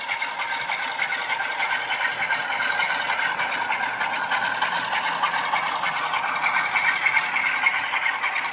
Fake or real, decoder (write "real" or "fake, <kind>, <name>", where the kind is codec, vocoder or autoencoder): real